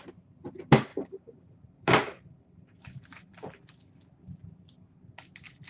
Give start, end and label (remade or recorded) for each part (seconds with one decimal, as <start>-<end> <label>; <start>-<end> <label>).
0.0-0.9 recorded; 0.9-3.9 remade; 3.9-5.7 recorded